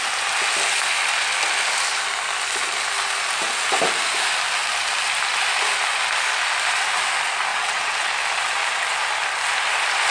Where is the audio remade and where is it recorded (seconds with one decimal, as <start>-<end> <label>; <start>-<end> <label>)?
0.0-7.5 recorded; 7.5-8.1 remade; 8.1-10.1 recorded